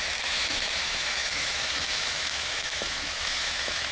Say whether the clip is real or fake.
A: fake